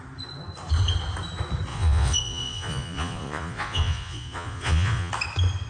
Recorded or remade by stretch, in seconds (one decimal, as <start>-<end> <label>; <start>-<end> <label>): 0.0-1.7 recorded; 1.7-5.1 remade; 5.1-5.7 recorded